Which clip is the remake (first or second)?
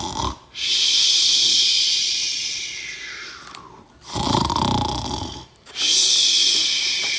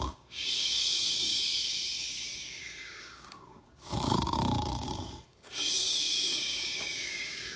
second